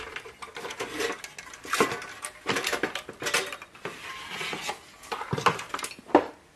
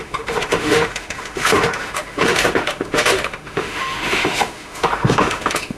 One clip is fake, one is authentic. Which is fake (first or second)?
second